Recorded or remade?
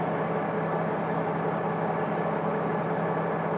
recorded